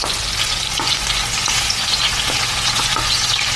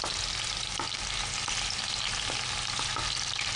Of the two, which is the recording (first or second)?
second